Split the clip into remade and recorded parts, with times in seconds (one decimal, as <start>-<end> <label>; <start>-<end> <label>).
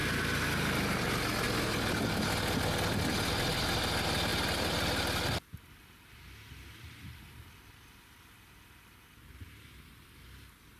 0.0-10.8 recorded